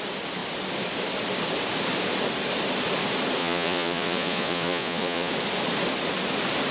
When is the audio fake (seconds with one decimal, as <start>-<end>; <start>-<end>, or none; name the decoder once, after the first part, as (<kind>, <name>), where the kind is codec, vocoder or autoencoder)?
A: 3.4-5.3 (vocoder, Vocos)